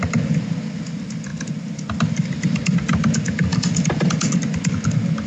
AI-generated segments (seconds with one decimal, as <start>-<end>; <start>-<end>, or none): none